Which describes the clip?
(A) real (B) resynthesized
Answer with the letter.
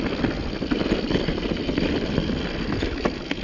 A